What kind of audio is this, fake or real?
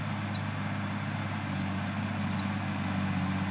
real